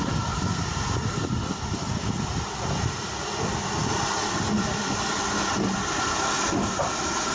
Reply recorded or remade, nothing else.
recorded